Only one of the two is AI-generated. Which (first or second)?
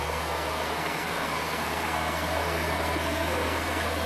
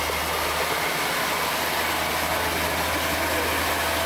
first